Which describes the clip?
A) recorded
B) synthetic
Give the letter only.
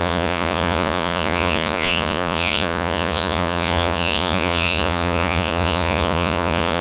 B